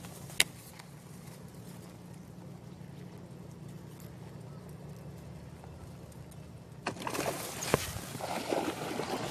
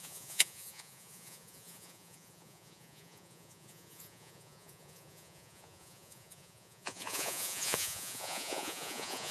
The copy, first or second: second